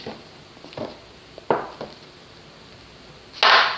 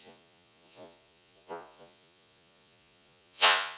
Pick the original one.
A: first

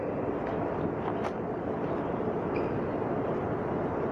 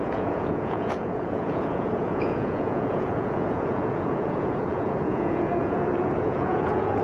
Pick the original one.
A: first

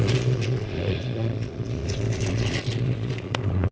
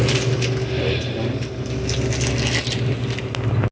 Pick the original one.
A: second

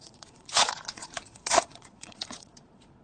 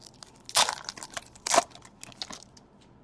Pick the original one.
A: second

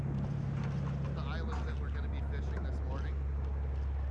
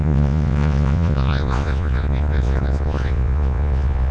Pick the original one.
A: first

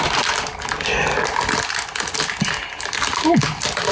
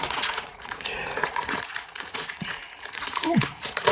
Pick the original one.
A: first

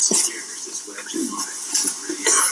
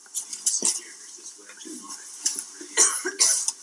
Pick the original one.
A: second